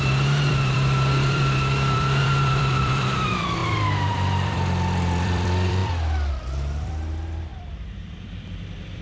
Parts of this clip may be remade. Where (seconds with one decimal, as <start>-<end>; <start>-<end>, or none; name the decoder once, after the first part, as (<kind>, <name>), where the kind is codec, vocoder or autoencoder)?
0.0-3.6 (vocoder, BigVGAN v2); 4.1-9.0

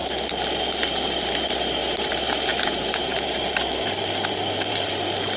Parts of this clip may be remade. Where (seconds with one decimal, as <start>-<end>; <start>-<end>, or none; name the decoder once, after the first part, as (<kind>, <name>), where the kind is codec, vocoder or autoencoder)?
1.8-3.5 (vocoder, BigVGAN v2); 4.4-4.9

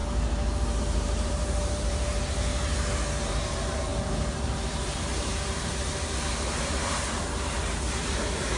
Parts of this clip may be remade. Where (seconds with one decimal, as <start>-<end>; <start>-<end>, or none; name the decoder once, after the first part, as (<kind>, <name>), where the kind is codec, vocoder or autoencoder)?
0.8-2.5 (vocoder, BigVGAN v2); 3.3-8.6

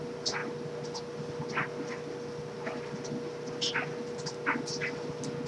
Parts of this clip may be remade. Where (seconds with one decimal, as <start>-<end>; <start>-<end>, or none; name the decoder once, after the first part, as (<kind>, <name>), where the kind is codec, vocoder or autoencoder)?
none

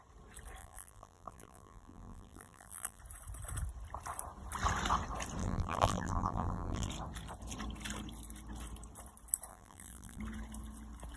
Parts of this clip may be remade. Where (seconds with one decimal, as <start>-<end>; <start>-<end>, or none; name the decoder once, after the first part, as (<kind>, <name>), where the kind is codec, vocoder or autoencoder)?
0.6-3.0 (vocoder, BigVGAN v2); 5.4-6.9; 9.5-10.2

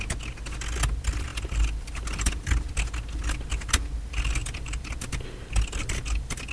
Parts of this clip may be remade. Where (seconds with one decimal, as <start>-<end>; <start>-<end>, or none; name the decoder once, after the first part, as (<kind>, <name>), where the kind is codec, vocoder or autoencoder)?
1.3-2.5 (vocoder, BigVGAN v2); 4.4-6.5

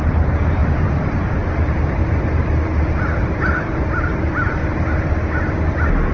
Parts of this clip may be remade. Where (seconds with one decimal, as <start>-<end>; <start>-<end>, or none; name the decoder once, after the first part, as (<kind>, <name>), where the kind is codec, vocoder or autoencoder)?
0.0-0.6 (vocoder, BigVGAN v2); 1.3-4.6

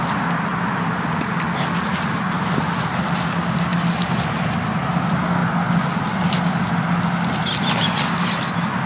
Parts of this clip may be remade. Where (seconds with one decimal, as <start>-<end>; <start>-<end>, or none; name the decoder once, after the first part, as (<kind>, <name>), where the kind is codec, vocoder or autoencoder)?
0.5-1.4 (vocoder, BigVGAN v2)